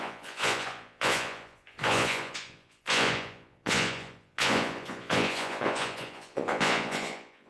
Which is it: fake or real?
fake